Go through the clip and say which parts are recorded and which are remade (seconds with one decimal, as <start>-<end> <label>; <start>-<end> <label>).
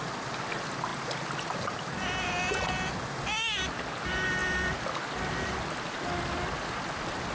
0.0-7.3 recorded